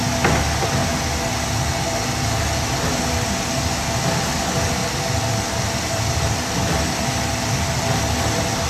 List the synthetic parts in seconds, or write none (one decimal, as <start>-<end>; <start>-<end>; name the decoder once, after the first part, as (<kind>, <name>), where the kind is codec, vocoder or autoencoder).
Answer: 4.8-7.3 (vocoder, BigVGAN v2)